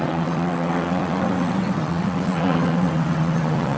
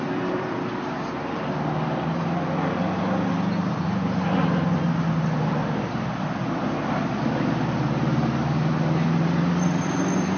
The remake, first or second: first